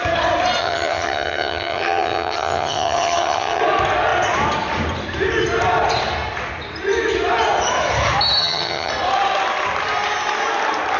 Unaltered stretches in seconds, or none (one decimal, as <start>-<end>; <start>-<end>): 0.0-0.6; 3.6-8.4; 8.9-11.0